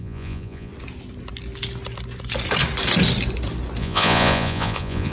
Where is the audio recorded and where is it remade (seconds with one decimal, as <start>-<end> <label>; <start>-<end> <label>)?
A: 0.0-0.7 remade; 0.7-3.8 recorded; 3.8-5.1 remade